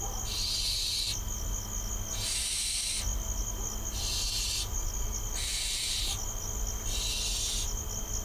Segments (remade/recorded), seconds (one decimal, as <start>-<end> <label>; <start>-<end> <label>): 0.0-8.2 recorded